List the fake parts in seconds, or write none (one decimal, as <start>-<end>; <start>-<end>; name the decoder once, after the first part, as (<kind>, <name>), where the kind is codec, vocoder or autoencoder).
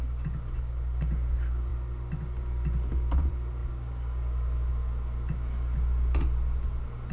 none